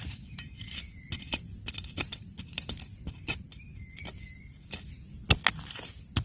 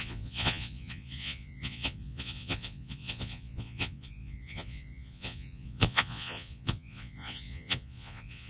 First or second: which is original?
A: first